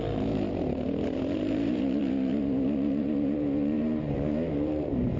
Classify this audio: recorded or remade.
remade